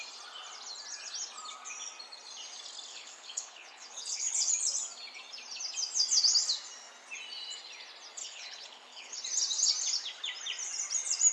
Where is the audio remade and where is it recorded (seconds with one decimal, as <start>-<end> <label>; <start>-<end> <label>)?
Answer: 0.0-2.9 recorded; 2.9-4.5 remade; 4.5-8.2 recorded; 8.2-9.2 remade; 9.2-11.3 recorded